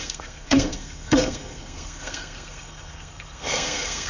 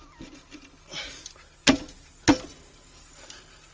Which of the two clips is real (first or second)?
second